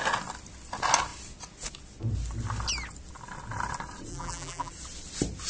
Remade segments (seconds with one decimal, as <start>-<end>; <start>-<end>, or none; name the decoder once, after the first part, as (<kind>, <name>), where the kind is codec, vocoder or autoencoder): 4.1-4.7 (vocoder, BigVGAN v2)